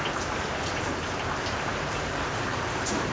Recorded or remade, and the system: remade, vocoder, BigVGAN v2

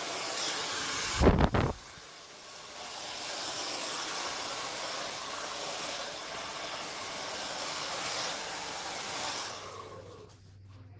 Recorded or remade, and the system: recorded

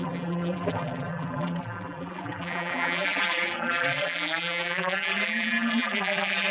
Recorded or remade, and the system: remade, vocoder, BigVGAN v2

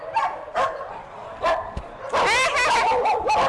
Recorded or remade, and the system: recorded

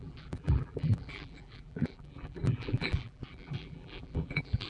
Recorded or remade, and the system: remade, vocoder, BigVGAN v2